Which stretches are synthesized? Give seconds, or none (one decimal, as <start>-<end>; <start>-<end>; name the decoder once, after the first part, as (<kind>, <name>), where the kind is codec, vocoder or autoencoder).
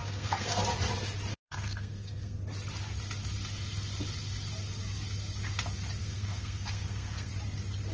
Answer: 0.0-0.6 (codec, SNAC); 1.3-2.4; 6.0-7.3